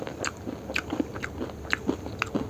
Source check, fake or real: real